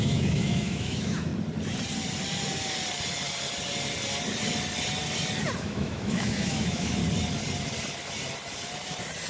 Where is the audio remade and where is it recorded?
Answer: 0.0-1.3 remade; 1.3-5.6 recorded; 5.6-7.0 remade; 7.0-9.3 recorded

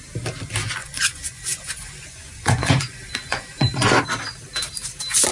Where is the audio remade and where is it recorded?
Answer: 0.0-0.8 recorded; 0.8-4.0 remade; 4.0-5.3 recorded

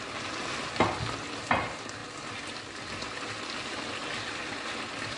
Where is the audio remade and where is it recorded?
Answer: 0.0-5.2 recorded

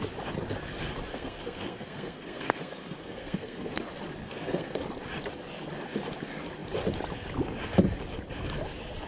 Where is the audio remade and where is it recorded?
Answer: 0.0-1.1 recorded; 1.1-3.8 remade; 3.8-4.2 recorded; 4.2-4.8 remade; 4.8-9.1 recorded

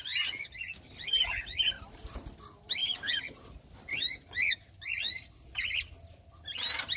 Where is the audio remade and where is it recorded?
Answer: 0.0-7.0 recorded